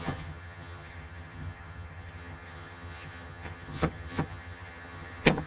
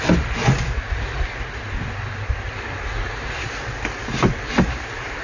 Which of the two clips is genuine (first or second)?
second